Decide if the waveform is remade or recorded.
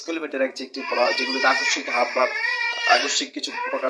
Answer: remade